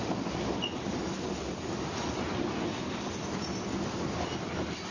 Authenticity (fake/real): real